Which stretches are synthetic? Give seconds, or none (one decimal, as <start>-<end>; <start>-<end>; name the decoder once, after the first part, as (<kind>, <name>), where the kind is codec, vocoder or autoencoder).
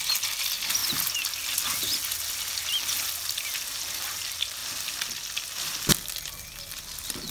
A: none